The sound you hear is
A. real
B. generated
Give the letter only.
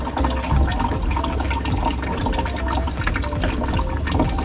A